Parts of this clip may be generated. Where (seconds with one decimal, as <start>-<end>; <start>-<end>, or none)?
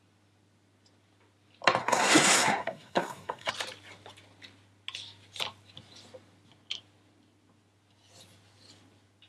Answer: 1.8-3.5